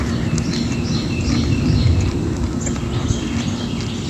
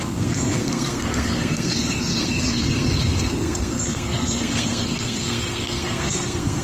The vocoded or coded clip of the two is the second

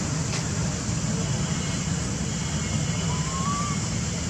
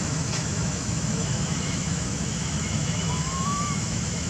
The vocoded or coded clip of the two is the second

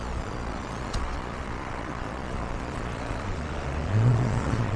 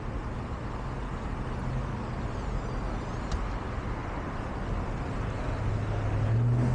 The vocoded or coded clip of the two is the first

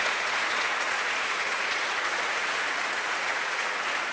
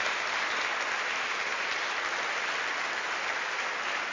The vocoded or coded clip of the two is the first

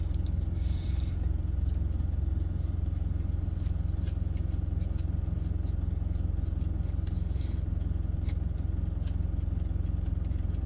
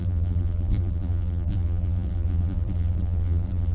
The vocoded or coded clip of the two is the second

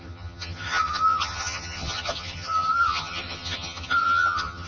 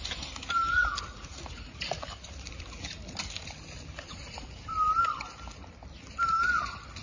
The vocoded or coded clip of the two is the first